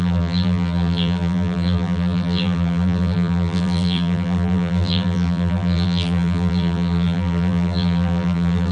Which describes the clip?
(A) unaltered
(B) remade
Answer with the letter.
B